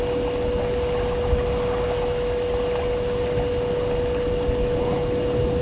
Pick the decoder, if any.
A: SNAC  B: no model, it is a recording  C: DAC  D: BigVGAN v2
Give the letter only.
B